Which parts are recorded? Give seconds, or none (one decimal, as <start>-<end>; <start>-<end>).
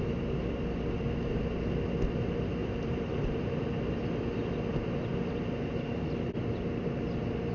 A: 0.0-2.6; 3.5-7.5